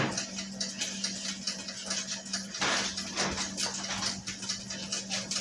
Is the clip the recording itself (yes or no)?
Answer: yes